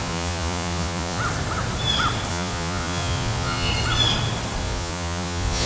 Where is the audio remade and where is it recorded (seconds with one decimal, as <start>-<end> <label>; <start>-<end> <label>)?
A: 0.0-1.2 remade; 1.2-2.3 recorded; 2.3-3.7 remade; 3.7-4.6 recorded; 4.6-5.7 remade